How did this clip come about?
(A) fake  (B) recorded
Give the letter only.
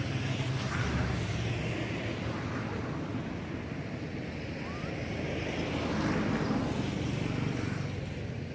B